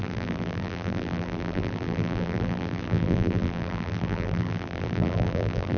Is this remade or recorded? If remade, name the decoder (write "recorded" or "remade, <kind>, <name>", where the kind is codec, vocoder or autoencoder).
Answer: remade, vocoder, BigVGAN v2